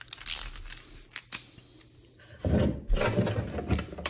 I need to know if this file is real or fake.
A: real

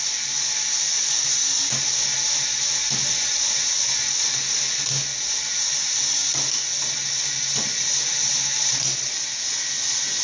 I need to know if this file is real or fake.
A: real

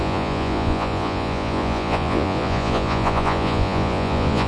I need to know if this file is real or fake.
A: fake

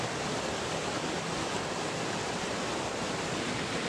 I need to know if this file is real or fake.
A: real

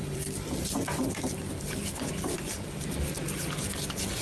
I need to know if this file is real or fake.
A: fake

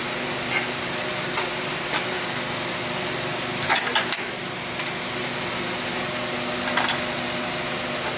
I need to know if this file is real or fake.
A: real